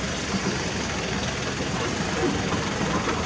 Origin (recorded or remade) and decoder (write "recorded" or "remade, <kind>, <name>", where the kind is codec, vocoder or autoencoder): recorded